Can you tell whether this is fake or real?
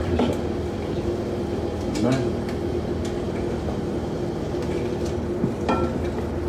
real